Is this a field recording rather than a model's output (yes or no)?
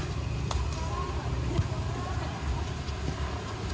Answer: yes